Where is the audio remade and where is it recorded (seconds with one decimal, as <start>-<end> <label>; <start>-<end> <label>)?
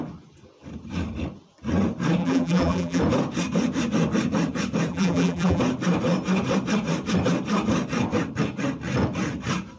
0.0-2.2 recorded; 2.2-3.0 remade; 3.0-4.9 recorded; 4.9-5.6 remade; 5.6-9.8 recorded